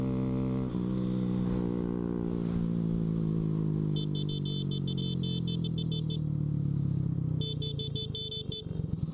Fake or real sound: real